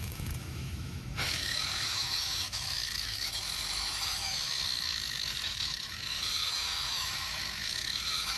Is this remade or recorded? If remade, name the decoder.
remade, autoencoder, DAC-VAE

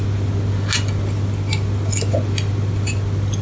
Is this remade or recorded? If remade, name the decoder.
recorded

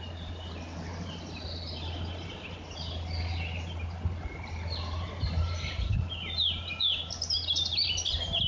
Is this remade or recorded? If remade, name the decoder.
remade, vocoder, BigVGAN v2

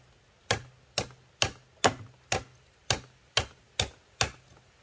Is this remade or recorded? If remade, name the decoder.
recorded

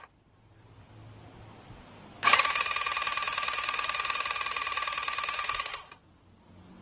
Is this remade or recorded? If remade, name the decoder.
recorded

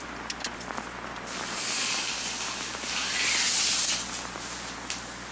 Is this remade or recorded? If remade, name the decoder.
recorded